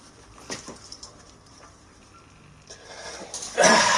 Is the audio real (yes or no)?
no